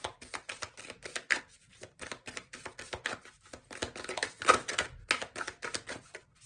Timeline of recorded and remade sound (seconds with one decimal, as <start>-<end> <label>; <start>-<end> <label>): 0.0-6.5 recorded